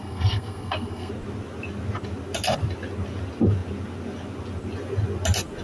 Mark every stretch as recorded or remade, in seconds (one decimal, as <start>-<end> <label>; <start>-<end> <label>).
0.0-1.1 remade; 1.1-5.6 recorded